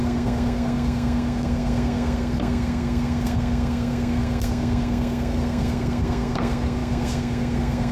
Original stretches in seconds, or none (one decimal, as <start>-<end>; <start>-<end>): none